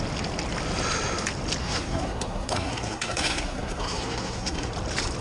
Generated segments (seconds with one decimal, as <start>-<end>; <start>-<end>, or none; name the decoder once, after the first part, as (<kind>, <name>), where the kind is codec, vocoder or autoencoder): 1.6-4.7 (codec, SNAC)